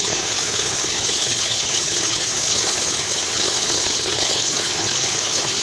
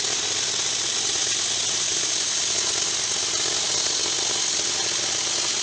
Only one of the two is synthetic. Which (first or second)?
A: first